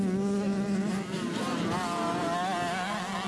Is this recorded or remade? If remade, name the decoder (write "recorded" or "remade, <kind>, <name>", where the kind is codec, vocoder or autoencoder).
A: recorded